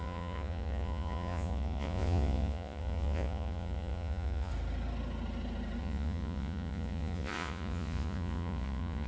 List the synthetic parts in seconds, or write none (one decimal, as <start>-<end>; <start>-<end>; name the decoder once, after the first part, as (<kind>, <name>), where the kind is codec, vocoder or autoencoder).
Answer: 0.0-4.5 (vocoder, Vocos); 5.8-9.1